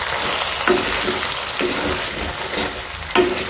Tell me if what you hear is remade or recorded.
recorded